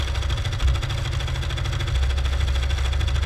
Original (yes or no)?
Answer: yes